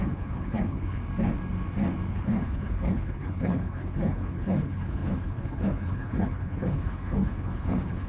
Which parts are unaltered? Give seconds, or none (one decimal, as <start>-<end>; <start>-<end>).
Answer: 1.0-2.1